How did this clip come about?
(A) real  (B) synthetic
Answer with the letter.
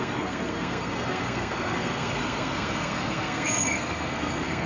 B